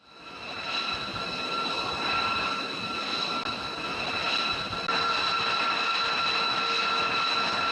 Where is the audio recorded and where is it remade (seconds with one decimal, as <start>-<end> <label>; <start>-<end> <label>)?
0.0-7.7 recorded